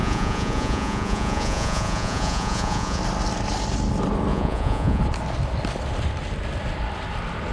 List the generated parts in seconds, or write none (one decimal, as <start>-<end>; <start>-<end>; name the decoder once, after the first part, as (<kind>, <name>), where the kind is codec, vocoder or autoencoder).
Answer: 0.0-3.0 (vocoder, Vocos); 4.3-5.0